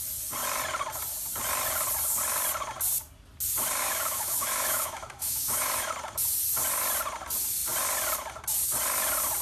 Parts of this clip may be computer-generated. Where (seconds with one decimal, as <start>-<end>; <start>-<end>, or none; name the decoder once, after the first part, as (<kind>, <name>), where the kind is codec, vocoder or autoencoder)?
3.8-5.9 (autoencoder, DAC-VAE)